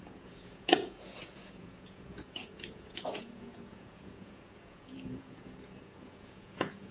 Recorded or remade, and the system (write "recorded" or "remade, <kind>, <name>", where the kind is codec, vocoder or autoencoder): remade, vocoder, Vocos